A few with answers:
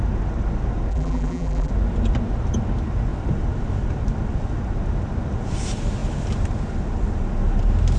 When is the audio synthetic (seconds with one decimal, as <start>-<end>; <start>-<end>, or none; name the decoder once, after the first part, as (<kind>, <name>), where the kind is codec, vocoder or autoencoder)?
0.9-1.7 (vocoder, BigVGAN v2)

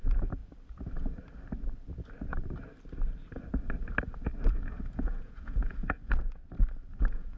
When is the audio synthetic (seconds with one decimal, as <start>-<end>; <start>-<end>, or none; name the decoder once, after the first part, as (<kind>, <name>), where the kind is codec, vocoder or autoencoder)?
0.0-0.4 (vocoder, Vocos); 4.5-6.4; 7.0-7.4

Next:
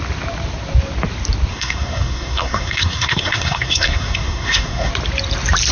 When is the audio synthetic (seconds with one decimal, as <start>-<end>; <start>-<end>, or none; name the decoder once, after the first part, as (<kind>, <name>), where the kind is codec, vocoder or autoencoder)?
1.5-4.9 (codec, SNAC)

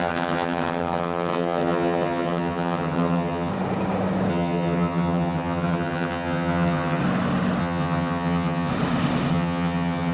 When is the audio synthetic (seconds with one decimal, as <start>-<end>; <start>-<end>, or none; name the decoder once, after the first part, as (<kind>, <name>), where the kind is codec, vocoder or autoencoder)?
0.0-3.5 (vocoder, HiFi-GAN); 4.3-7.0; 7.6-8.7; 9.3-10.1

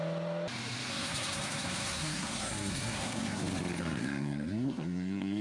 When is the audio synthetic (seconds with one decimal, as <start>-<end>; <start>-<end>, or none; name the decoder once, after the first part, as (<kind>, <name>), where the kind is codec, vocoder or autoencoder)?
0.9-3.4 (codec, SNAC); 3.8-5.4